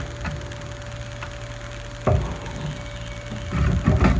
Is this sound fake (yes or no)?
no